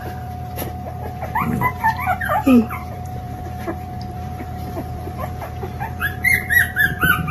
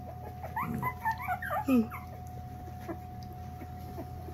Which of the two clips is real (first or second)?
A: second